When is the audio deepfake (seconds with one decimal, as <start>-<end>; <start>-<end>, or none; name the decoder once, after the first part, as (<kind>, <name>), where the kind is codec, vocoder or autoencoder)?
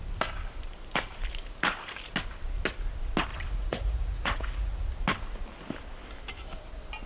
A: 3.3-4.8 (vocoder, Vocos)